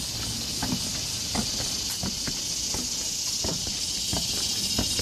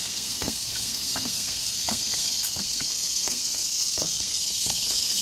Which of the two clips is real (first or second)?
first